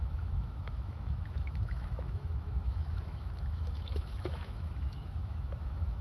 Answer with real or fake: fake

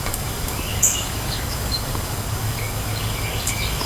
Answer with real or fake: fake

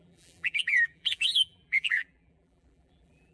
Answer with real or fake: fake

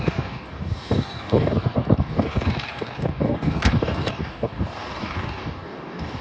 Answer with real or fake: fake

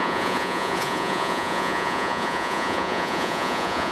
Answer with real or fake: fake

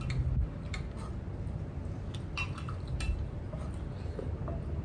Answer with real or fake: real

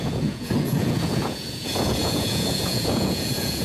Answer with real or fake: fake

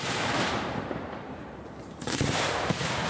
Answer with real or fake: fake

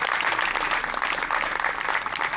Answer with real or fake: real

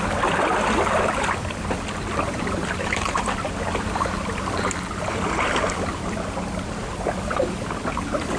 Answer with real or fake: fake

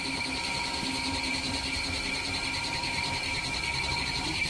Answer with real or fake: fake